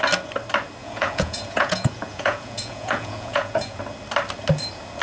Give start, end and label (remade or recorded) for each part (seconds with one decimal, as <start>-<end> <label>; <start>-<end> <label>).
0.0-0.8 recorded; 0.8-3.8 remade; 3.8-5.0 recorded